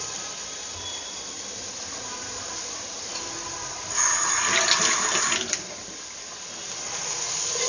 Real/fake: real